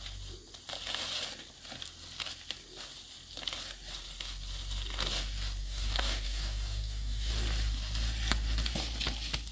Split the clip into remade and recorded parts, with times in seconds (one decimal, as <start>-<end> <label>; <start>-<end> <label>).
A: 0.0-5.6 recorded; 5.6-7.3 remade; 7.3-9.5 recorded